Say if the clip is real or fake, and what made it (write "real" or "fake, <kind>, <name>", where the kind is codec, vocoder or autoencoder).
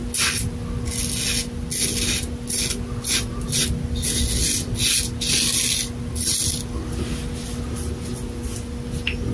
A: real